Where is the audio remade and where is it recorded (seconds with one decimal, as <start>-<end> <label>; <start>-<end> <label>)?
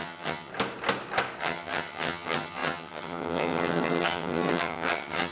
0.0-0.5 remade; 0.5-1.4 recorded; 1.4-5.3 remade